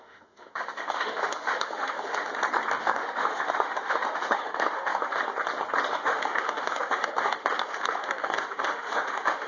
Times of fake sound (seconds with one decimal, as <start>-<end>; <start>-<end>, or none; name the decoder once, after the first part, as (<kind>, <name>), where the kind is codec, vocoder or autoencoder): 0.0-2.3 (autoencoder, DAC-VAE); 2.8-5.2; 5.9-9.5